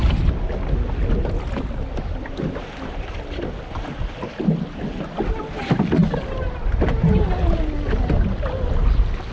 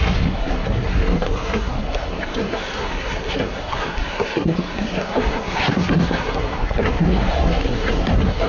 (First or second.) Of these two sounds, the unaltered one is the first